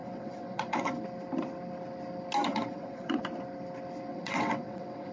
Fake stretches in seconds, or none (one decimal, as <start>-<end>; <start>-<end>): 0.0-0.9; 2.5-3.2; 4.1-5.1